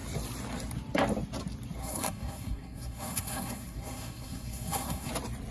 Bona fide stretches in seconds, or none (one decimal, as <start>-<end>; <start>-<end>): 0.0-1.8; 5.1-5.5

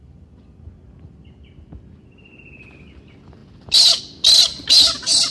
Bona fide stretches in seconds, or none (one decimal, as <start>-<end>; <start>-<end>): 0.0-5.3